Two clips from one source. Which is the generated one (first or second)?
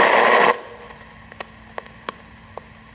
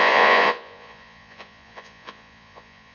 second